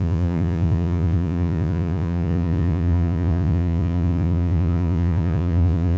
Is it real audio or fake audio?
fake